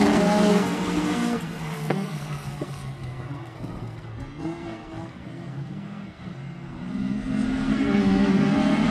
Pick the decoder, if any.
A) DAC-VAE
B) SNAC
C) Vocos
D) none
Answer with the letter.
B